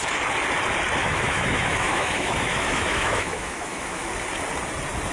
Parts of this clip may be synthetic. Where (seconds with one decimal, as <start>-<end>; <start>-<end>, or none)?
1.0-4.1